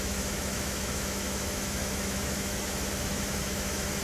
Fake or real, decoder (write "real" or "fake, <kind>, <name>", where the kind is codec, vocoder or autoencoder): fake, autoencoder, DAC-VAE